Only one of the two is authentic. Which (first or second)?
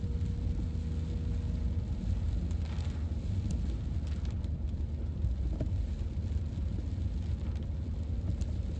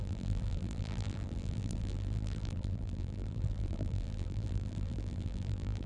first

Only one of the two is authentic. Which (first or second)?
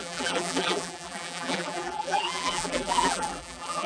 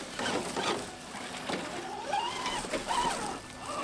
second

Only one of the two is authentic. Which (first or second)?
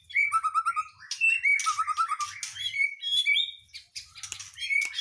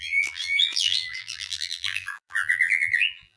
first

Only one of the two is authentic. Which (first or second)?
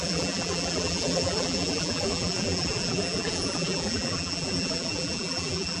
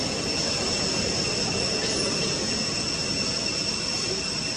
second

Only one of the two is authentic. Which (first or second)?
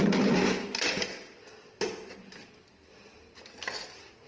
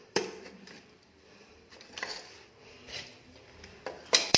first